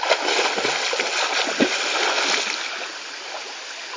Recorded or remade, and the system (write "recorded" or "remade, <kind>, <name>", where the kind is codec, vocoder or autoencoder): recorded